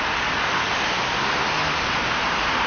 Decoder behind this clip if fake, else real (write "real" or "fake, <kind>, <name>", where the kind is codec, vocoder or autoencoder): real